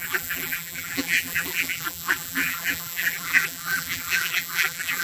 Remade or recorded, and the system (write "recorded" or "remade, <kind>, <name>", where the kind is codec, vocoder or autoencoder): remade, vocoder, BigVGAN v2